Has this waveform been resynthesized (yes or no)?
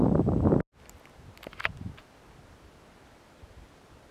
no